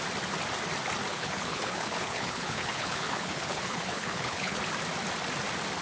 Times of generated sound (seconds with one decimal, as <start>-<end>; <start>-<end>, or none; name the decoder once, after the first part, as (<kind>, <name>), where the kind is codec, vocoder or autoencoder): 1.1-4.6 (codec, HILCodec)